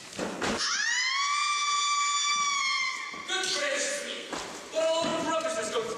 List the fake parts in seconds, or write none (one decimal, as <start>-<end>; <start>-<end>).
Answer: 3.6-4.3